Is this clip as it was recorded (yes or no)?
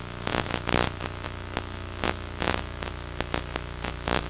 no